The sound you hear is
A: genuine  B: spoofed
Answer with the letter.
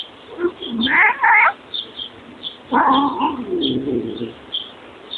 A